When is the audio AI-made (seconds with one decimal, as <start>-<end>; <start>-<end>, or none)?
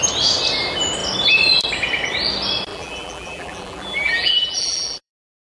2.7-5.1